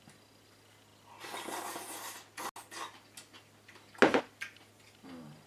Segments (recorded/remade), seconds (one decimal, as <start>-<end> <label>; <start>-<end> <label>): 0.0-5.5 recorded